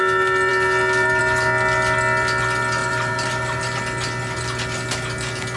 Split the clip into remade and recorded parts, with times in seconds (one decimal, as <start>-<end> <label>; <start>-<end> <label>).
0.0-2.8 recorded; 2.8-3.8 remade; 3.8-5.6 recorded